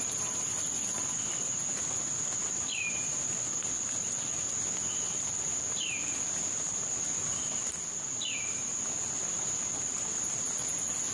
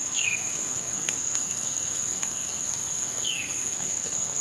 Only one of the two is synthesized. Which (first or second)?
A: second